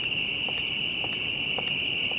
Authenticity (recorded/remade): recorded